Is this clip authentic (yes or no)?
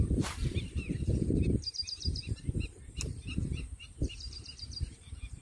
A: no